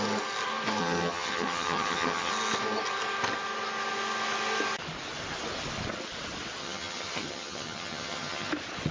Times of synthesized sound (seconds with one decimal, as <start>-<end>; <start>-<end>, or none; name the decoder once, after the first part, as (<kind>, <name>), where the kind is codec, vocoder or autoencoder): 0.8-2.3 (vocoder, HiFi-GAN); 6.6-8.5

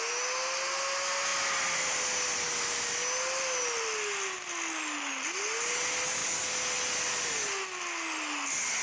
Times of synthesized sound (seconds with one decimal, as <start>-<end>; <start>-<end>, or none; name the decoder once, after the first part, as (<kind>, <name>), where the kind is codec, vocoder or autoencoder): none

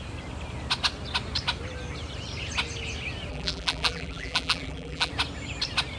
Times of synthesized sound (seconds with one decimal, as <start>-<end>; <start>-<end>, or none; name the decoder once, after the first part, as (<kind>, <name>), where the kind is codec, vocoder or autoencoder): 3.3-5.1 (vocoder, BigVGAN v2)